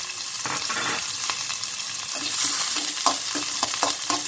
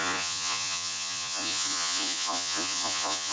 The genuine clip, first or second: first